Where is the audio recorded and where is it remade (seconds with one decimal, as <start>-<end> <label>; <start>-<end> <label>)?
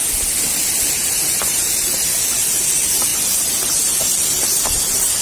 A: 0.0-5.2 recorded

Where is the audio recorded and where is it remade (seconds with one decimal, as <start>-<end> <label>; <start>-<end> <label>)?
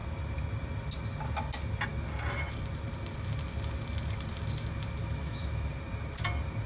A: 0.0-5.0 recorded; 5.0-5.7 remade; 5.7-6.7 recorded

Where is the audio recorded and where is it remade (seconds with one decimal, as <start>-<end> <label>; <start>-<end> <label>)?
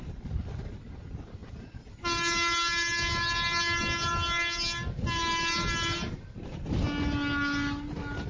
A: 0.0-8.3 recorded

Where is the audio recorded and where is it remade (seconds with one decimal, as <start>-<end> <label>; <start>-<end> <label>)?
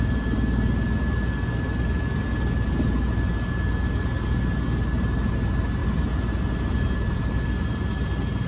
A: 0.0-8.5 recorded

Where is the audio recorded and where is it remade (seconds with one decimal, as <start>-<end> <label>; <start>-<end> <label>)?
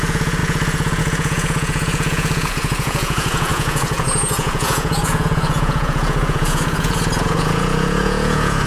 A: 0.0-8.7 remade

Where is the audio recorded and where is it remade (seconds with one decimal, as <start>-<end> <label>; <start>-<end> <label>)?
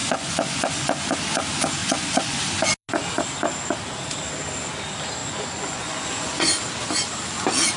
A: 0.0-1.0 remade; 1.0-1.8 recorded; 1.8-2.4 remade; 2.4-5.2 recorded; 5.2-6.6 remade; 6.6-7.8 recorded